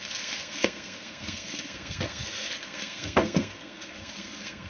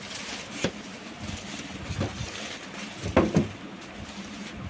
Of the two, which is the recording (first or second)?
second